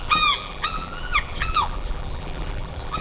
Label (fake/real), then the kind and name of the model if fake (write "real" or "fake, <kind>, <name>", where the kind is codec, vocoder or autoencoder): fake, vocoder, BigVGAN v2